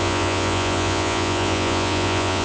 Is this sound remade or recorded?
remade